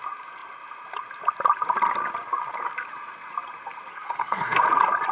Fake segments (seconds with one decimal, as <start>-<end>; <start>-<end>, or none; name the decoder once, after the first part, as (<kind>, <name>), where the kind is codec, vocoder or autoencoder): 3.9-4.6 (codec, SNAC)